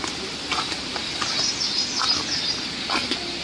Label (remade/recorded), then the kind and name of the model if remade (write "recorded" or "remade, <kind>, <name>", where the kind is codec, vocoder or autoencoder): recorded